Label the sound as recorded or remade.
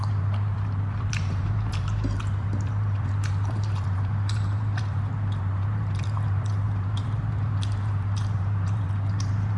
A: remade